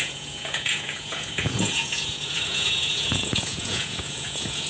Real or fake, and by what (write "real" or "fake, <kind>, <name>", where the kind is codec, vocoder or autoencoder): fake, vocoder, Vocos